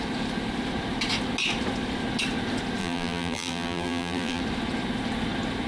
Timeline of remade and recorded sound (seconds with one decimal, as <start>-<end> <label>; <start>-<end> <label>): 0.0-2.8 recorded; 2.8-4.4 remade; 4.4-5.7 recorded